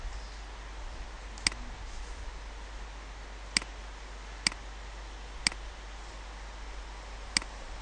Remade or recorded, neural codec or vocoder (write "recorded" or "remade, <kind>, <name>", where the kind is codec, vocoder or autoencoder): recorded